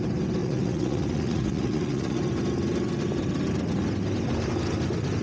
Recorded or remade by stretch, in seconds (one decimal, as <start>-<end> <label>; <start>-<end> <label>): 0.0-0.4 recorded; 0.4-2.2 remade; 2.2-5.2 recorded